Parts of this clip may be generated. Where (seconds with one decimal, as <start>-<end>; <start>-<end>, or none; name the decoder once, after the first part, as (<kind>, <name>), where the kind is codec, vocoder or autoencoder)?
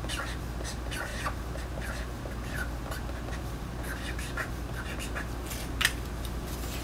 none